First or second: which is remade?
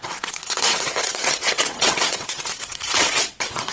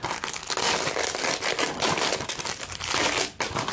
first